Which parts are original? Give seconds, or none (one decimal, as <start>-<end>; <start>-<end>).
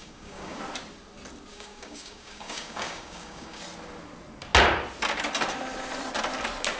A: 0.6-1.5; 3.6-6.8